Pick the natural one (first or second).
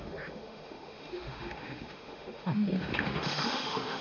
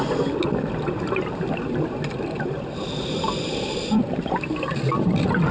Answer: second